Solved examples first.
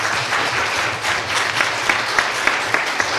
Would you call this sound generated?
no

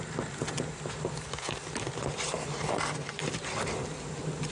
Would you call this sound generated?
no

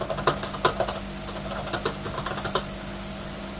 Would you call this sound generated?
no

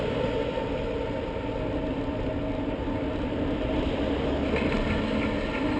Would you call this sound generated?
no